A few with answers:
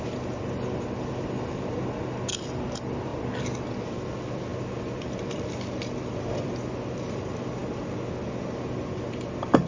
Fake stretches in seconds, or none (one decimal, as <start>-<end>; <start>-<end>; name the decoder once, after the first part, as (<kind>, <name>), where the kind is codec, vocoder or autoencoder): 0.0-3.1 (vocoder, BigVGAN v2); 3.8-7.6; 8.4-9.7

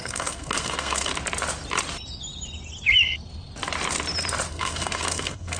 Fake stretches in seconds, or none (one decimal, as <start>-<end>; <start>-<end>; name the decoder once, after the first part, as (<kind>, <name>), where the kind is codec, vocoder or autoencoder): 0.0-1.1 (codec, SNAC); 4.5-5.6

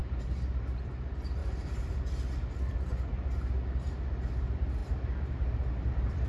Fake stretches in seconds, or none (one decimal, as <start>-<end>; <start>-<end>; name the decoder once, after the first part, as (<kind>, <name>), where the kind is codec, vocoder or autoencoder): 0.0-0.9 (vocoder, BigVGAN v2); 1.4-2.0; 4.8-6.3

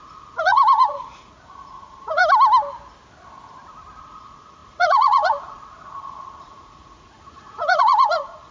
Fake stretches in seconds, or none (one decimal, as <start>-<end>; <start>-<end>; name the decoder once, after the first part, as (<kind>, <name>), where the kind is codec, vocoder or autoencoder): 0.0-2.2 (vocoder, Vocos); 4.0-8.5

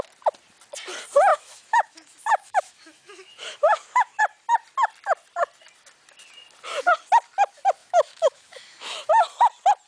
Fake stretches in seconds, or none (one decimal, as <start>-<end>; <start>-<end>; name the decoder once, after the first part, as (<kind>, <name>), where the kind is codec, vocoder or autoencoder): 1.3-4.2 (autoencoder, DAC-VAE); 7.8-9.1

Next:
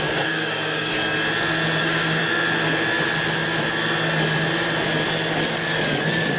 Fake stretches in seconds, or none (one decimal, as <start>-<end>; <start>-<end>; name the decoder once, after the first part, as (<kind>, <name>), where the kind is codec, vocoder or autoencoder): 0.0-0.9 (codec, DAC); 1.8-2.2; 6.0-6.4